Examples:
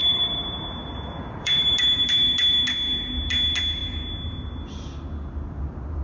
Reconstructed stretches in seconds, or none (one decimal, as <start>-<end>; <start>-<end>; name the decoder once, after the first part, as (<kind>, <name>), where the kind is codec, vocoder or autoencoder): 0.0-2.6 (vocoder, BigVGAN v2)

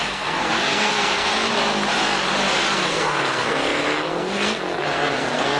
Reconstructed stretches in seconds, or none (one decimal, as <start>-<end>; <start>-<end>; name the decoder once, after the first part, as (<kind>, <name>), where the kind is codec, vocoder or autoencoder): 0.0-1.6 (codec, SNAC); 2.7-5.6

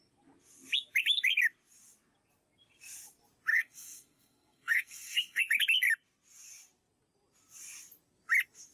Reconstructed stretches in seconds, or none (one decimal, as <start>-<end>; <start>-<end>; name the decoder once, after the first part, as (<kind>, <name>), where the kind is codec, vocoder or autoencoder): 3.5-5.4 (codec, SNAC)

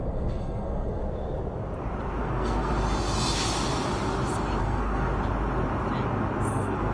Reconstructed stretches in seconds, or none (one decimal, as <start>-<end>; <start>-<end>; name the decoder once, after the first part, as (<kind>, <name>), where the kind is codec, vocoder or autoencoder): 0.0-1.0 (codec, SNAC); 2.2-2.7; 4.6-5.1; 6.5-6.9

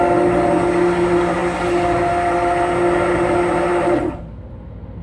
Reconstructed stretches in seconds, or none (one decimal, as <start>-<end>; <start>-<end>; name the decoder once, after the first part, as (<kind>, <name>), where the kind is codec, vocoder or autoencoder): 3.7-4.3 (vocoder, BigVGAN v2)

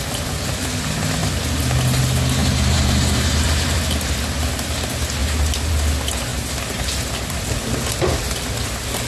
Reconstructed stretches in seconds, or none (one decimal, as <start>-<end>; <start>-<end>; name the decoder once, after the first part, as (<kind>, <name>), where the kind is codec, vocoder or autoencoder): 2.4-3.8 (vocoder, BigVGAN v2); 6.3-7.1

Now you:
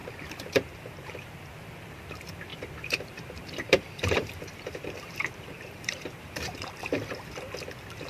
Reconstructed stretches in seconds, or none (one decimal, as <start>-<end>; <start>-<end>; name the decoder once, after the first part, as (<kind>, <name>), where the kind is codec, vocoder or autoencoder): 0.0-1.1 (vocoder, BigVGAN v2); 2.5-7.3